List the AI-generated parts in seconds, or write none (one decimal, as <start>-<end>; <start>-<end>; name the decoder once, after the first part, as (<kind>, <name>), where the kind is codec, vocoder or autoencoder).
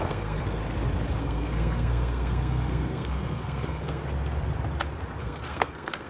0.0-0.6 (codec, SNAC); 1.2-4.0; 5.2-6.1